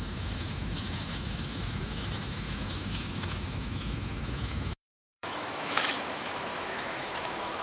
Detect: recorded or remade remade